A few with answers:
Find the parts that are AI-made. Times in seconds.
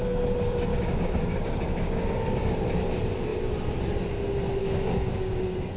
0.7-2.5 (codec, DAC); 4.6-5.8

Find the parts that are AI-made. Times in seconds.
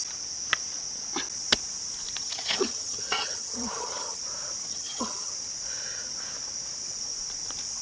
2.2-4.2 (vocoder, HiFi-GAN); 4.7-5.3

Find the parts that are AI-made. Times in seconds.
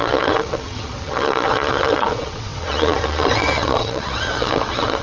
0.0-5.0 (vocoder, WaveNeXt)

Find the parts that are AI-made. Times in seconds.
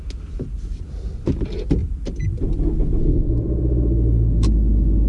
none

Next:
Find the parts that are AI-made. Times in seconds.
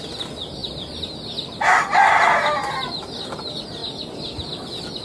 3.8-4.5 (vocoder, BigVGAN v2)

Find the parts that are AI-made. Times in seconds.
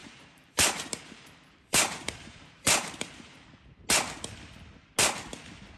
0.0-3.5 (vocoder, BigVGAN v2)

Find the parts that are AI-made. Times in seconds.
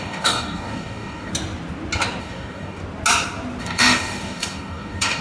0.0-1.3 (codec, DAC); 2.2-2.8; 3.6-5.2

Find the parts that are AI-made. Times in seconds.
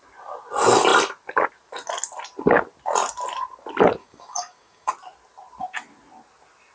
4.0-4.9 (codec, DAC)